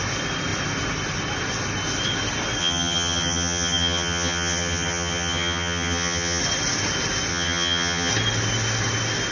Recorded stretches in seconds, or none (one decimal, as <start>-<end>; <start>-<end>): 0.0-2.6; 6.4-7.3; 8.1-9.3